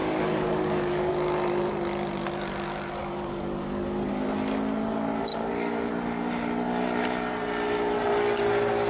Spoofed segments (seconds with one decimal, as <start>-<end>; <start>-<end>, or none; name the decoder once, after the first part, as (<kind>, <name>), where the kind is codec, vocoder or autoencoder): 0.0-1.1 (codec, DAC); 3.0-4.1; 5.3-5.9